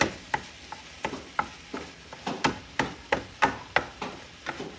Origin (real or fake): real